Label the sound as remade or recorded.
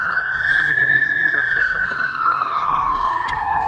remade